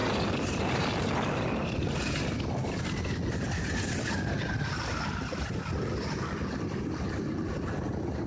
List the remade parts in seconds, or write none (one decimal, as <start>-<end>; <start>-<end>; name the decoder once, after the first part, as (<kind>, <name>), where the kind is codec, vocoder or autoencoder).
none